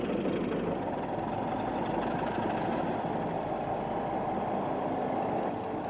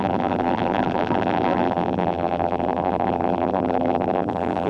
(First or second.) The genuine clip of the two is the first